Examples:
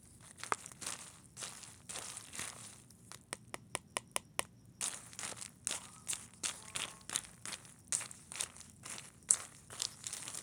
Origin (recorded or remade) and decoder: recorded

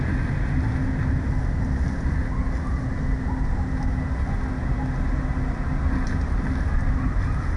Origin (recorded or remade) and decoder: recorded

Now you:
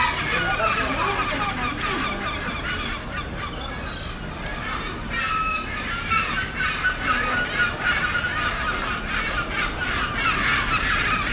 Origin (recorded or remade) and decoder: recorded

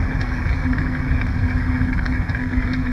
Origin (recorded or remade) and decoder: remade, codec, SNAC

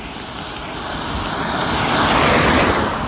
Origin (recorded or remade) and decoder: recorded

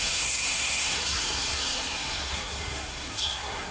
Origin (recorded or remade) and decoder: remade, codec, SNAC